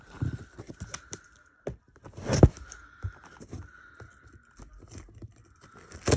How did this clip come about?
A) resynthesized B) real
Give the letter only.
B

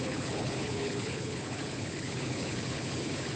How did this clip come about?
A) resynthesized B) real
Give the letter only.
A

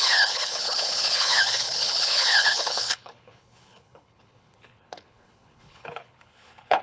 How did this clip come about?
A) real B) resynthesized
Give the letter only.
B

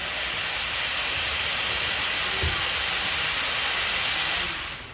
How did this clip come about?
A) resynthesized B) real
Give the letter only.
B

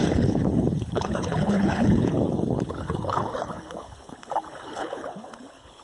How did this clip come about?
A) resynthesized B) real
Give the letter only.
A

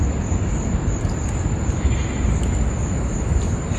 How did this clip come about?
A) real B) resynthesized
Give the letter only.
A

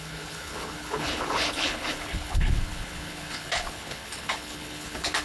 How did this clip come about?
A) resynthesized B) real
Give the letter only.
A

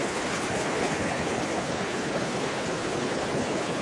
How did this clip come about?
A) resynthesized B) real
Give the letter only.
A